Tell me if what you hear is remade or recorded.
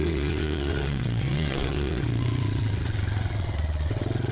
remade